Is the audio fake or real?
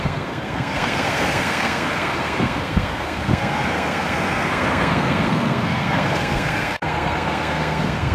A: fake